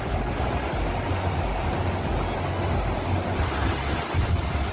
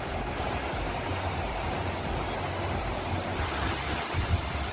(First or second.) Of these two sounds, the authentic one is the first